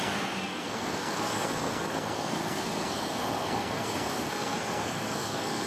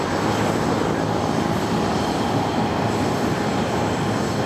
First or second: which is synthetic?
first